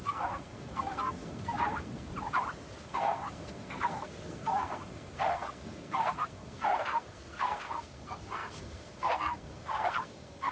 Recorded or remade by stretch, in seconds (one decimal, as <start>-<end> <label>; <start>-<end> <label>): 0.0-2.1 remade; 2.1-2.8 recorded; 2.8-10.5 remade